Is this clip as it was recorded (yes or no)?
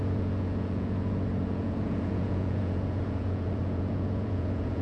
no